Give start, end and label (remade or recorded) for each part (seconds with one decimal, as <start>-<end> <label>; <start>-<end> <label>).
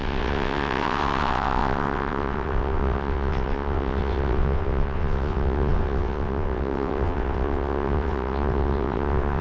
0.0-9.4 remade